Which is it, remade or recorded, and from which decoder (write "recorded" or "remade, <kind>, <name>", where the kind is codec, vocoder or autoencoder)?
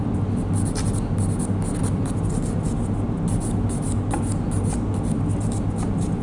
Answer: recorded